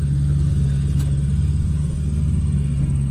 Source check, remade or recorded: recorded